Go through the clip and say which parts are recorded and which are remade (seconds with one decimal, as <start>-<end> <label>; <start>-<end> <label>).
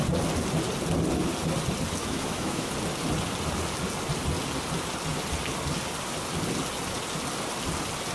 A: 0.0-2.0 recorded; 2.0-2.7 remade; 2.7-8.1 recorded